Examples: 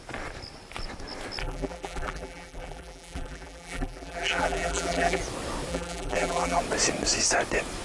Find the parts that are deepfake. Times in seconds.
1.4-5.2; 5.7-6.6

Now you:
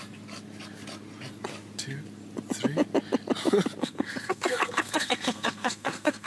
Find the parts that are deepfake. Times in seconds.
3.8-6.3

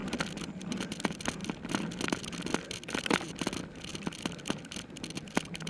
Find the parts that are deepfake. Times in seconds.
none